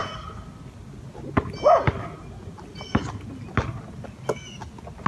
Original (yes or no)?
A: yes